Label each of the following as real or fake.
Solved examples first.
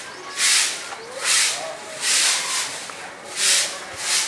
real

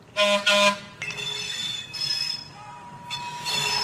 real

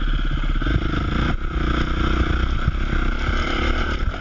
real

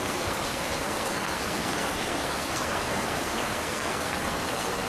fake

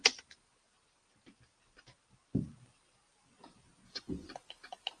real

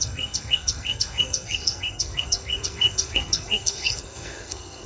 fake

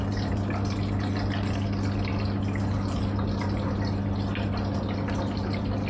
real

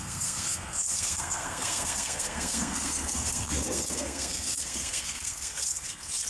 fake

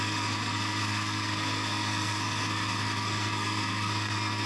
fake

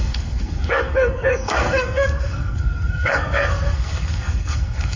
fake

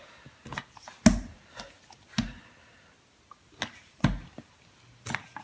real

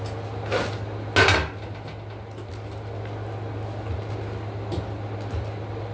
real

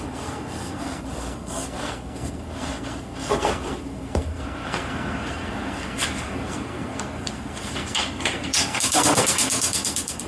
fake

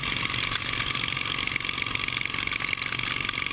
real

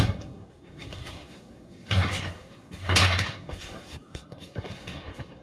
fake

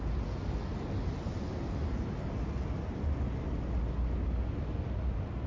real